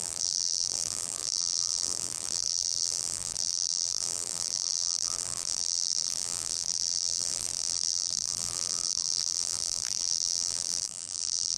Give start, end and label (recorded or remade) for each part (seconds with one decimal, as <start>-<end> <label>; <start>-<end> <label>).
0.0-11.6 remade